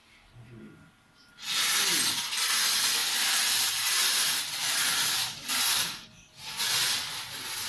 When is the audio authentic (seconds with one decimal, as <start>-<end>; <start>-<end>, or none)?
0.0-3.0; 5.6-7.7